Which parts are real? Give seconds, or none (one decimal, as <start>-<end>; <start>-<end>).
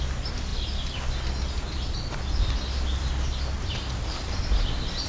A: 0.0-5.1